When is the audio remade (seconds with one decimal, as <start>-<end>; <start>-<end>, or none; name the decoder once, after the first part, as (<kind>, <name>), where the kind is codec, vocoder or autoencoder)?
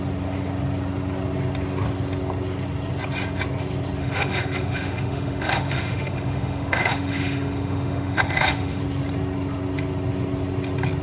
4.0-8.8 (autoencoder, DAC-VAE)